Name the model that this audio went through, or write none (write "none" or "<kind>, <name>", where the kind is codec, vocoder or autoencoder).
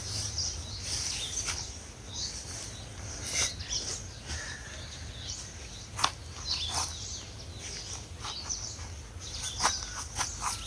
none